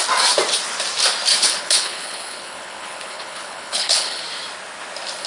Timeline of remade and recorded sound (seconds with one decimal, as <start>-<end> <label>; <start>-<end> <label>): 0.0-1.3 recorded; 1.3-4.2 remade; 4.2-5.3 recorded